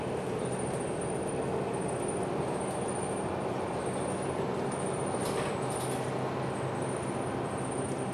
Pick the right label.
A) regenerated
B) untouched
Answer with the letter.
B